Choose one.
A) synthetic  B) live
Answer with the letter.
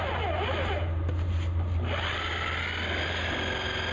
B